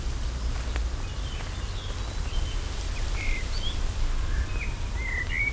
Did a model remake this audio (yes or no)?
no